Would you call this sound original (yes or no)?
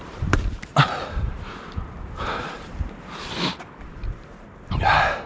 no